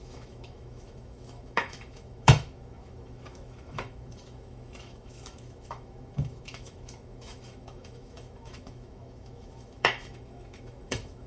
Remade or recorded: remade